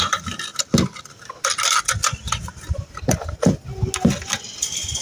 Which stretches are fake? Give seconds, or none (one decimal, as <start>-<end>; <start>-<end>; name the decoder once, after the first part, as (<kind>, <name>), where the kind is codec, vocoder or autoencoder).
none